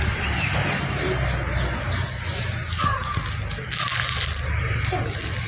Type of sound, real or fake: real